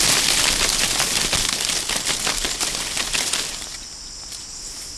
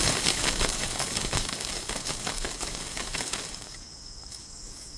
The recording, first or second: first